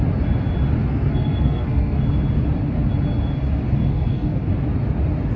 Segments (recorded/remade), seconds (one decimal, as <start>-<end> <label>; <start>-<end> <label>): 0.0-0.9 recorded; 0.9-2.0 remade; 2.0-3.9 recorded; 3.9-4.5 remade; 4.5-5.4 recorded